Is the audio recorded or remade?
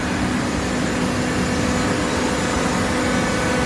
recorded